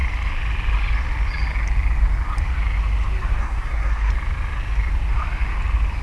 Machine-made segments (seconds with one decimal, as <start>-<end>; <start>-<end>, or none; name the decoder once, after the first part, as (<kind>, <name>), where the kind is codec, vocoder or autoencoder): 3.4-4.1 (codec, SNAC)